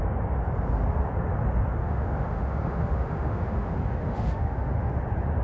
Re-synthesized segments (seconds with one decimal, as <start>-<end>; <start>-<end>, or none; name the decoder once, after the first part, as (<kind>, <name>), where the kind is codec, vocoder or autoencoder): 1.8-4.9 (autoencoder, DAC-VAE)